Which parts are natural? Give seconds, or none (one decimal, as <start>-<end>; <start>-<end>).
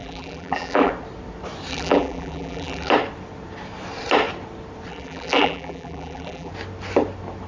0.9-1.7; 2.9-4.9; 6.5-7.5